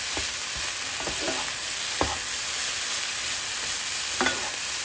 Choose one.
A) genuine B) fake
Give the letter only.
A